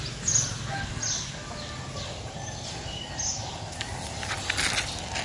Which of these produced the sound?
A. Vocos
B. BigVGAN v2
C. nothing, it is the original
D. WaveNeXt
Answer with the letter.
C